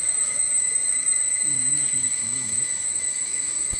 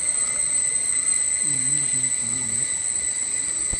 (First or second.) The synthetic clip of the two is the first